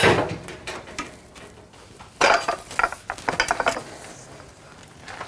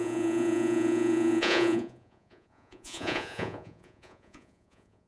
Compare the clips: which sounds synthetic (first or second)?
second